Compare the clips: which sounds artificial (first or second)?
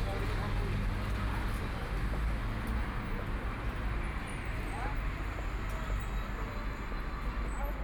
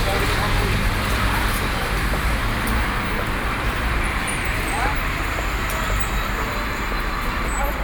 second